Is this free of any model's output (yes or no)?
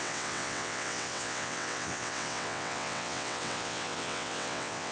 no